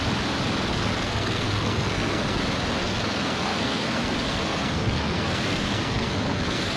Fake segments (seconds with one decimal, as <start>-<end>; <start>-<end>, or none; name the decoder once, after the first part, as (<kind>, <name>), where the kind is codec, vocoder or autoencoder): 0.7-2.4 (codec, SNAC); 2.8-6.8